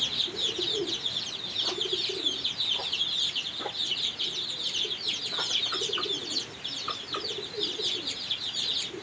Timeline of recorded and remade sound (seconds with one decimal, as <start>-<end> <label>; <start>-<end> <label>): 0.0-9.0 recorded